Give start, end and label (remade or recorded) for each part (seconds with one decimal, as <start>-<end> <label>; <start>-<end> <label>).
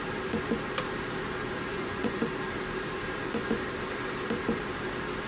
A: 0.0-1.7 recorded; 1.7-2.2 remade; 2.2-5.3 recorded